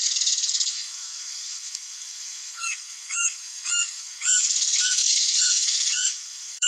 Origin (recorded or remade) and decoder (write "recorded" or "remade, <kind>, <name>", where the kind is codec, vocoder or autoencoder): remade, codec, SNAC